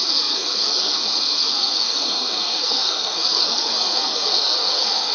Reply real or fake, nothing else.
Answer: fake